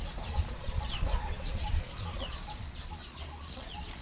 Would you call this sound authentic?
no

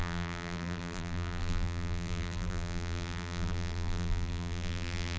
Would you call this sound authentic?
no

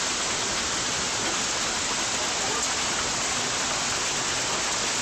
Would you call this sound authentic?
yes